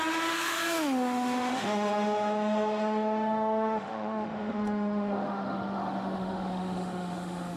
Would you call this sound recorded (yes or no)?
no